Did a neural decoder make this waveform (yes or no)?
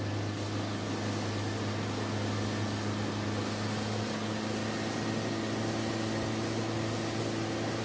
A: no